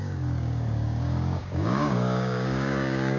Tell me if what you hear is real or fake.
fake